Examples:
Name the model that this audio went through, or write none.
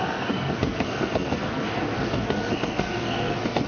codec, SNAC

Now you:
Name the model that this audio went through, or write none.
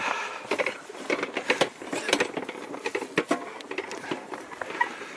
none